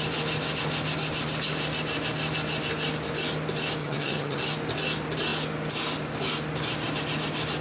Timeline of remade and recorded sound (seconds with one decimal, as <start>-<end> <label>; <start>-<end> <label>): 0.0-3.8 recorded; 3.8-4.4 remade; 4.4-7.6 recorded